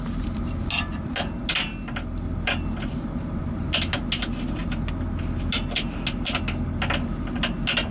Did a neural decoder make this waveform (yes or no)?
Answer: no